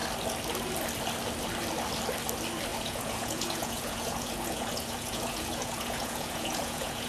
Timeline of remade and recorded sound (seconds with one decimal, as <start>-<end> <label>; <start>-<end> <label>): 0.0-2.7 recorded; 2.7-7.1 remade